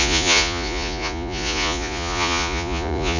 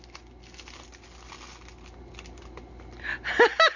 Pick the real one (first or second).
second